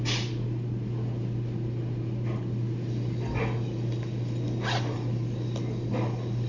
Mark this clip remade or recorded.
recorded